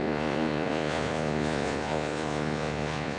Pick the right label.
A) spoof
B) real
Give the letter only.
A